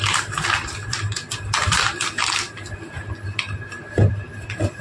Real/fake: real